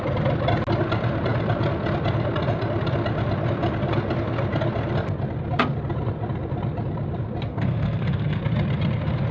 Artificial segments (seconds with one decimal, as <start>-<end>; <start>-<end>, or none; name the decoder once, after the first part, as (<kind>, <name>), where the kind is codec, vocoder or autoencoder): 7.5-8.4 (codec, SNAC)